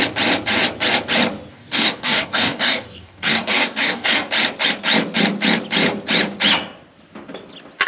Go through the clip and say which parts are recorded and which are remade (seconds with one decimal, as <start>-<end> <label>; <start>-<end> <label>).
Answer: 0.0-1.5 recorded; 1.5-4.3 remade; 4.3-7.9 recorded